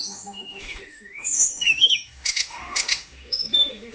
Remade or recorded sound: remade